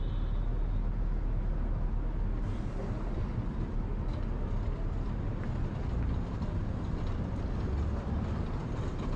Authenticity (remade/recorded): recorded